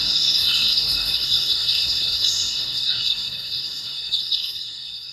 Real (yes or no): no